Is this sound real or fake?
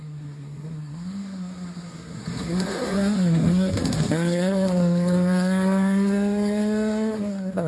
fake